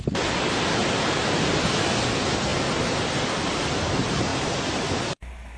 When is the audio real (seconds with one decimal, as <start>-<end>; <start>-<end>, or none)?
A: 0.0-0.8; 1.4-4.3